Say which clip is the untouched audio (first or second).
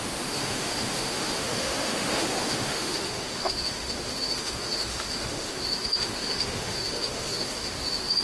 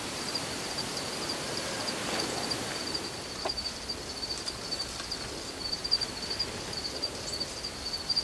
second